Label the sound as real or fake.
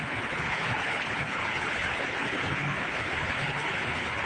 fake